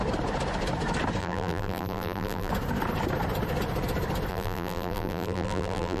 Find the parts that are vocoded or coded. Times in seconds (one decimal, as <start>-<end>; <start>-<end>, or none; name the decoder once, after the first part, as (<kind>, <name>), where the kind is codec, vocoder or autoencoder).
1.2-2.5 (vocoder, BigVGAN v2); 4.3-6.0